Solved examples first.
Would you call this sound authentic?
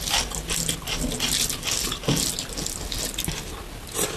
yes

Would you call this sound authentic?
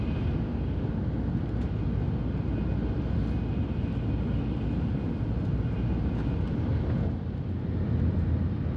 yes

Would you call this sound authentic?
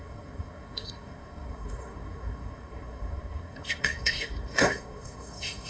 no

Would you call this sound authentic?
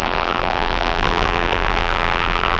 no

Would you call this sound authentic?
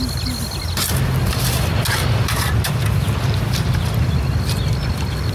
yes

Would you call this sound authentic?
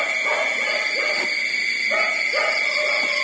yes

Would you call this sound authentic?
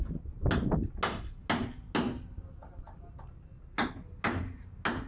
yes